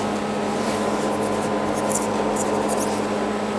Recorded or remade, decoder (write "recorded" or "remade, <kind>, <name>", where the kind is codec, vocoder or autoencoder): recorded